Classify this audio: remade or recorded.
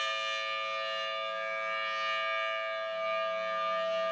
recorded